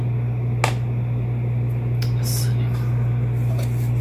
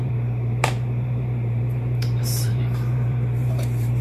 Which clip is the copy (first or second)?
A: second